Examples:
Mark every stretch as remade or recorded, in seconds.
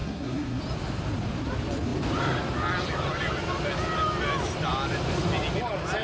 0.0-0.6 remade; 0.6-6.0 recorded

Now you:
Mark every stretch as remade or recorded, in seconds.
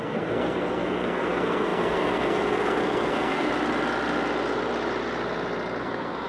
0.0-3.5 remade; 3.5-5.8 recorded; 5.8-6.3 remade